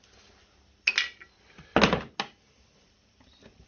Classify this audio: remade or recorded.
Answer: recorded